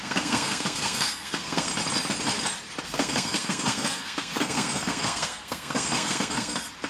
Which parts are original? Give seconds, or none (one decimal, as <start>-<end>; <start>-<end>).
1.7-2.8